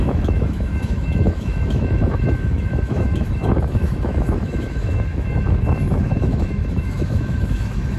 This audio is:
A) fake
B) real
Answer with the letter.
A